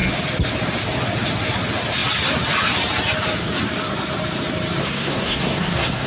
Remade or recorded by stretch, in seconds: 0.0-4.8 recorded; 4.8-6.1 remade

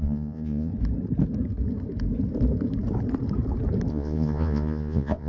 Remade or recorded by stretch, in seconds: 0.0-0.7 remade; 0.7-3.9 recorded; 3.9-5.3 remade

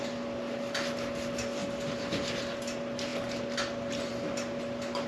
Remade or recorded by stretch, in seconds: 0.0-5.1 recorded

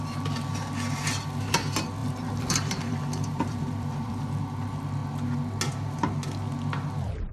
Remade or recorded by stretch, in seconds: 0.0-2.0 recorded; 2.0-4.2 remade; 4.2-7.3 recorded

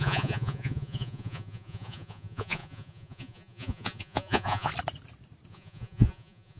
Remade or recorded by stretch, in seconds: 0.0-4.7 remade; 4.7-5.5 recorded; 5.5-6.6 remade

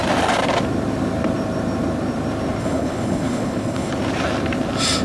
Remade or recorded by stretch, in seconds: 0.0-2.6 recorded; 2.6-3.9 remade; 3.9-5.0 recorded

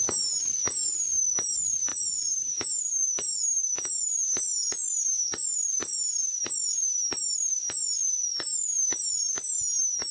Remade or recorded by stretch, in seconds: 0.0-1.9 recorded; 1.9-3.4 remade; 3.4-10.1 recorded

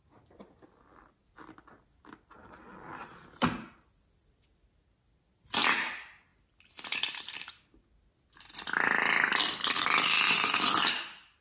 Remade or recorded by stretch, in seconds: 0.0-11.4 recorded